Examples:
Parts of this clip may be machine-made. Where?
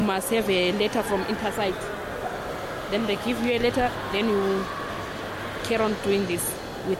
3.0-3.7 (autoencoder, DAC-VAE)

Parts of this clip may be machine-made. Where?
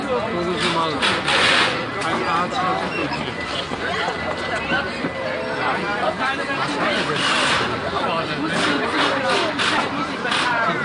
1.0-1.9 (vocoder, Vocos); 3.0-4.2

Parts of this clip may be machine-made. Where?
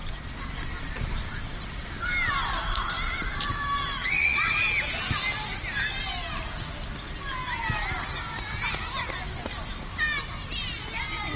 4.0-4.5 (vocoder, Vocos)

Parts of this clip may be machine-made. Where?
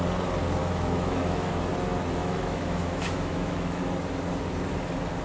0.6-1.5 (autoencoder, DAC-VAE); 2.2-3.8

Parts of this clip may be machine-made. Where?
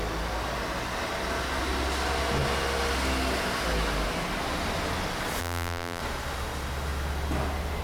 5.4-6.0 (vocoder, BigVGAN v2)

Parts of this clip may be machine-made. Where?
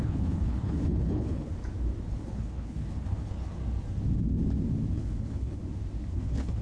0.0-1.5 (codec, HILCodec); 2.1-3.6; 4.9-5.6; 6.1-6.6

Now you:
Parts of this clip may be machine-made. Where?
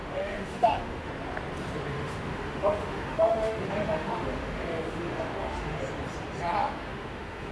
0.0-1.1 (autoencoder, DAC-VAE); 1.9-5.8; 6.6-7.5